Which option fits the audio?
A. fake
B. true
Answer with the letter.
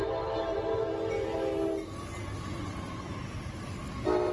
B